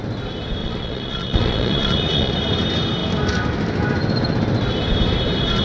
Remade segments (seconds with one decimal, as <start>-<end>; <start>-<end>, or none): 0.6-2.3